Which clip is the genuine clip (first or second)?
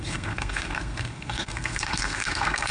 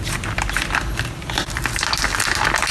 second